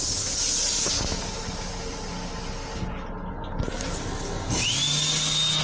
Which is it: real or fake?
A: real